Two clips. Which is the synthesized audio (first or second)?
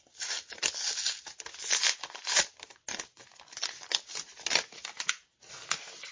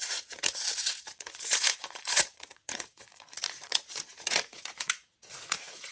second